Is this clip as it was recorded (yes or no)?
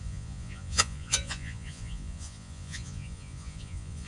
no